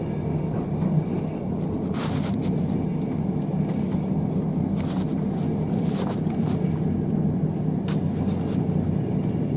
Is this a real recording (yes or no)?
yes